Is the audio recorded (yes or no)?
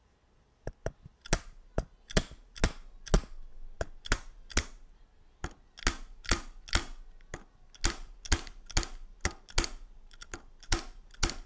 yes